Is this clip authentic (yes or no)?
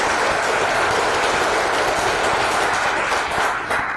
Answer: yes